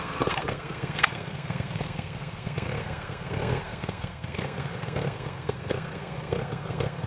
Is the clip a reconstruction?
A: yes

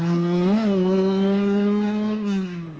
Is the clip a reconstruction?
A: yes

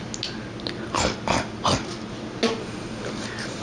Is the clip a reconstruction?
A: no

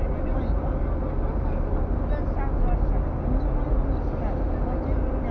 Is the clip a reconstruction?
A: no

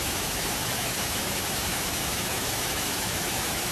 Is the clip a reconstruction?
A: yes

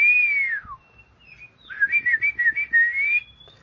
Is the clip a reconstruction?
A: no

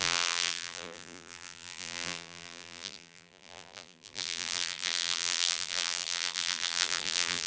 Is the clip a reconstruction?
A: yes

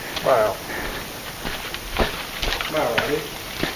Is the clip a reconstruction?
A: no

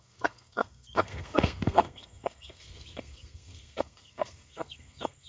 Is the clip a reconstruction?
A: yes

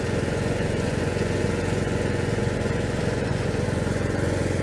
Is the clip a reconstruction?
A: yes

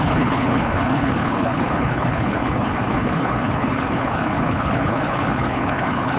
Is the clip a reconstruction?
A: yes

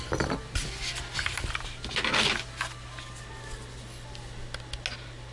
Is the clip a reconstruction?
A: no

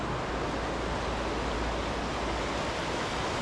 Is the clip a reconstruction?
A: no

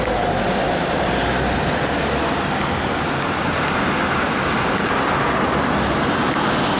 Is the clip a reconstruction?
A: no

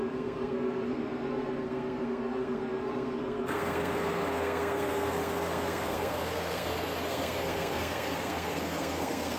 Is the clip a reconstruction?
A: yes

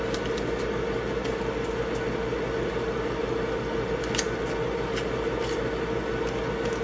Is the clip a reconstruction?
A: no